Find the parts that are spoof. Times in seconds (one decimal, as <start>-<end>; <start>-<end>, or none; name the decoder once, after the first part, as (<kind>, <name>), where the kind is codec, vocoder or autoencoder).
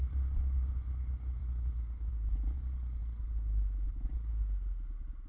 none